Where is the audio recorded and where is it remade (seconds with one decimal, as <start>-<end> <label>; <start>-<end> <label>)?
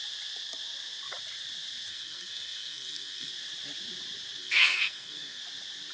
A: 0.0-1.9 recorded; 1.9-3.3 remade; 3.3-4.4 recorded; 4.4-5.4 remade; 5.4-5.9 recorded